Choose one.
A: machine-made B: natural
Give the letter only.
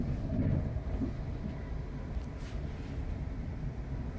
B